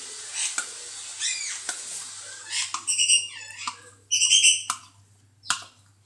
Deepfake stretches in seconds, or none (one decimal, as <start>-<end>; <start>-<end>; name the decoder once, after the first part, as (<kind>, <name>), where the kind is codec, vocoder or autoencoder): none